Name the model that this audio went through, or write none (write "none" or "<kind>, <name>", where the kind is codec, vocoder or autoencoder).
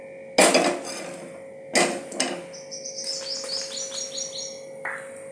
none